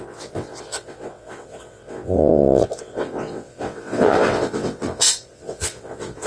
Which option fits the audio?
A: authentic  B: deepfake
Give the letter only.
B